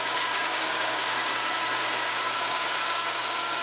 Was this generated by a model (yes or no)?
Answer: yes